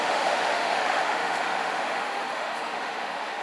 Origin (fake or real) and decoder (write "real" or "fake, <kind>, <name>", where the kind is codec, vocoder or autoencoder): fake, autoencoder, DAC-VAE